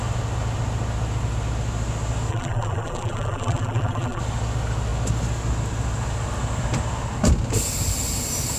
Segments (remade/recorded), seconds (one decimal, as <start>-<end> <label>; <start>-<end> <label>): 0.0-2.3 recorded; 2.3-4.2 remade; 4.2-8.6 recorded